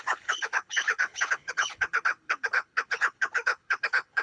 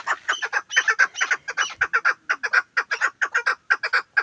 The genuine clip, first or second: second